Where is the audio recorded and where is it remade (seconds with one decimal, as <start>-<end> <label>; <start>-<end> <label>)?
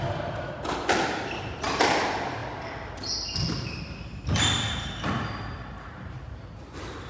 0.0-7.1 recorded